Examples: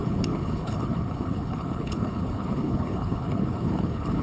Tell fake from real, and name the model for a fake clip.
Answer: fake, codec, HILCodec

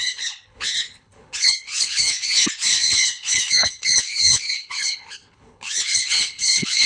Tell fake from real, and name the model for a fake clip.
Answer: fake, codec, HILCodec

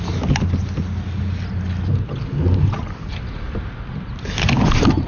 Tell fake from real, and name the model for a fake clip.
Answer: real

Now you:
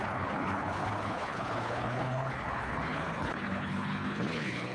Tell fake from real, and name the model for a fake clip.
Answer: fake, codec, HILCodec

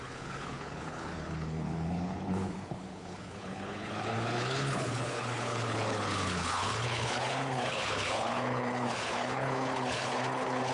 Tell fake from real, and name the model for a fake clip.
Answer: fake, codec, HILCodec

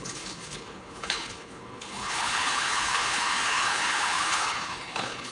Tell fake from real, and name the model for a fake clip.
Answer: fake, codec, HILCodec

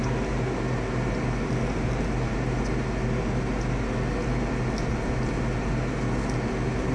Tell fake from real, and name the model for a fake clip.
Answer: real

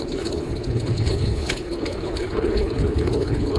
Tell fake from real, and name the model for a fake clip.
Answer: fake, codec, HILCodec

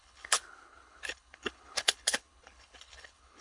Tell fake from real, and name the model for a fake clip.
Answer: fake, codec, HILCodec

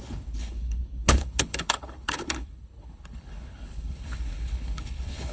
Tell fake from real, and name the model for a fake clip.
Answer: fake, codec, HILCodec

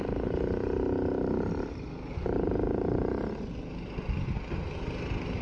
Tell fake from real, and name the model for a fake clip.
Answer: real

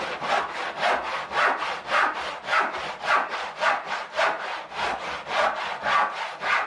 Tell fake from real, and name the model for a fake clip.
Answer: real